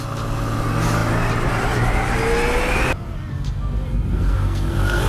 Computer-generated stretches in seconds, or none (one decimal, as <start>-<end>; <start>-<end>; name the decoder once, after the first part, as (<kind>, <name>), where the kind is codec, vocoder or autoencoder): 3.3-5.1 (codec, SNAC)